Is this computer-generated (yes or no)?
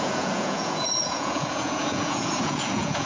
yes